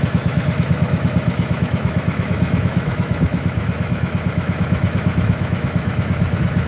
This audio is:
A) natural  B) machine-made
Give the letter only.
B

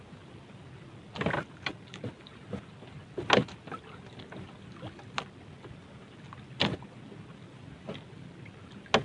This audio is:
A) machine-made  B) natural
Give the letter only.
B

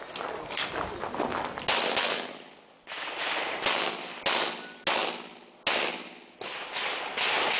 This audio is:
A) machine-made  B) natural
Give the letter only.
B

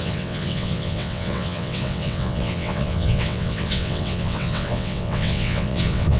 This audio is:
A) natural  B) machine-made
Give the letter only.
B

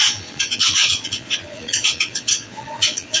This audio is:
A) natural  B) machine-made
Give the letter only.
B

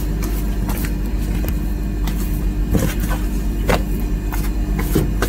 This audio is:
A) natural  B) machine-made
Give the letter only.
A